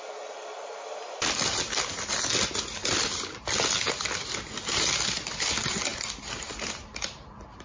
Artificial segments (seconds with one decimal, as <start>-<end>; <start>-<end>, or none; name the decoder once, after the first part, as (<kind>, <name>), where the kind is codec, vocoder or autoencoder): none